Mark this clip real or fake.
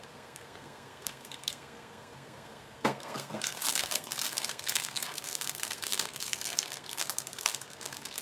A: fake